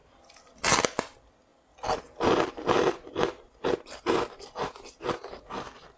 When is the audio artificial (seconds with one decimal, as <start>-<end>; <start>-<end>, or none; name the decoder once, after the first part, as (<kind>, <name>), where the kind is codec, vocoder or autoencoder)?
none